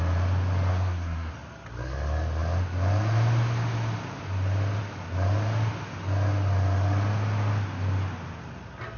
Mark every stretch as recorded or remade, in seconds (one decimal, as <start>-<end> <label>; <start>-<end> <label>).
0.0-0.7 recorded; 0.7-1.3 remade; 1.3-9.0 recorded

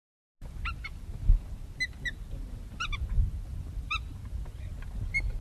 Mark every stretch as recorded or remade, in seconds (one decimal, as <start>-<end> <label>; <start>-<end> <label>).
0.0-3.5 recorded; 3.5-4.6 remade; 4.6-5.4 recorded